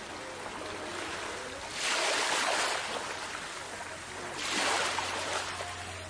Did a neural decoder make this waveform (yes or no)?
no